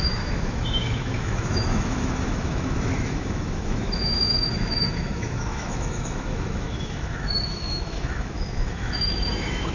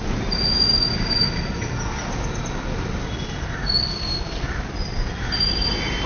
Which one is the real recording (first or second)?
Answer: second